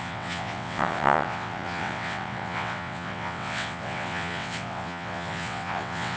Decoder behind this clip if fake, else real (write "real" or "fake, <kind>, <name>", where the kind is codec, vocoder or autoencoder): fake, vocoder, WaveNeXt